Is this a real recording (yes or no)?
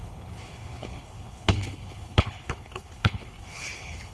no